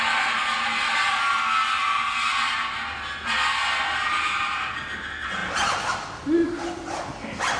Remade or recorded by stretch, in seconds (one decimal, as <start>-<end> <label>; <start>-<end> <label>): 0.0-7.6 recorded